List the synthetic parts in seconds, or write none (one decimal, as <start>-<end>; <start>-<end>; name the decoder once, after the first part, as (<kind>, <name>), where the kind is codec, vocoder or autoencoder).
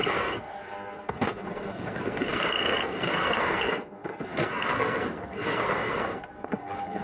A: 0.0-7.0 (codec, SNAC)